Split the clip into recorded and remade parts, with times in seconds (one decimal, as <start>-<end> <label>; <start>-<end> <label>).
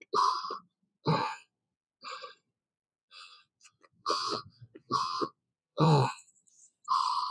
0.0-1.2 recorded; 1.2-1.9 remade; 1.9-3.0 recorded; 3.0-6.6 remade; 6.6-7.3 recorded